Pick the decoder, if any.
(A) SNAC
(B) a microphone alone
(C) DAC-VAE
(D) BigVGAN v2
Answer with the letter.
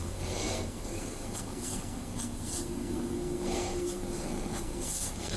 A